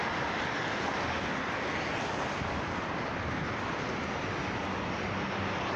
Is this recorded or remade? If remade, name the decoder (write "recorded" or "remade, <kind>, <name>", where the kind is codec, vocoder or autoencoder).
recorded